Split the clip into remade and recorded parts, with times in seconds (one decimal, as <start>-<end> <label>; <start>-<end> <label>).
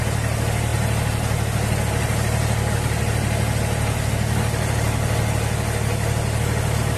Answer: 0.0-7.0 recorded